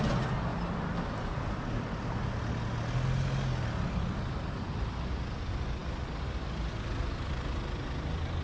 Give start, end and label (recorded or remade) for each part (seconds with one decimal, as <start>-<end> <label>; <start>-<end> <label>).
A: 0.0-8.4 recorded